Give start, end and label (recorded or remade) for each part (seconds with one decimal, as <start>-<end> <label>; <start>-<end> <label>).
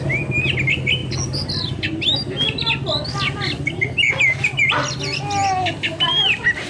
0.0-6.7 recorded